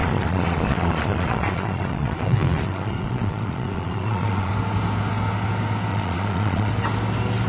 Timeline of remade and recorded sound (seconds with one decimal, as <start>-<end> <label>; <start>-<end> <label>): 0.0-4.5 remade; 4.5-5.9 recorded; 5.9-6.7 remade; 6.7-7.5 recorded